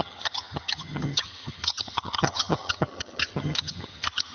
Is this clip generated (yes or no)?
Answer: yes